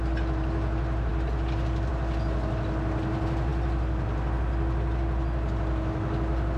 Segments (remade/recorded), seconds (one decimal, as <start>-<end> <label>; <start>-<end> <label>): 0.0-6.6 recorded